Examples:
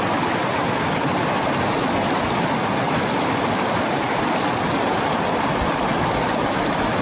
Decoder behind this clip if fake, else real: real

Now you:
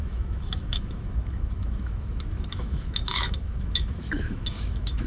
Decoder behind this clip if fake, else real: fake, autoencoder, DAC-VAE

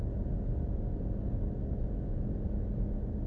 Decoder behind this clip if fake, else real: real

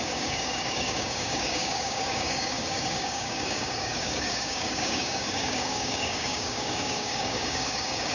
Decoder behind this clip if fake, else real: fake, codec, DAC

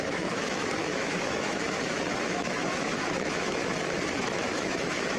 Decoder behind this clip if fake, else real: fake, autoencoder, DAC-VAE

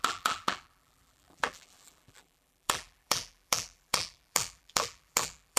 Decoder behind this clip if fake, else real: fake, vocoder, BigVGAN v2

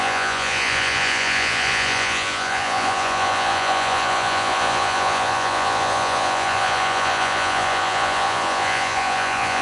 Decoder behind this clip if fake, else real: fake, vocoder, Vocos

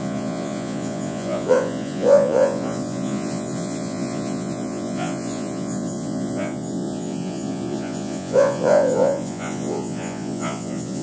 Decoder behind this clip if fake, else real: fake, vocoder, Vocos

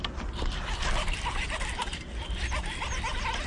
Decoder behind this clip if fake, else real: real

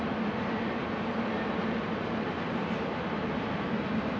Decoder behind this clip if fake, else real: real